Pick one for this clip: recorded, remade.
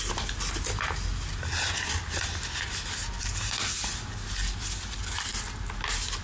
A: recorded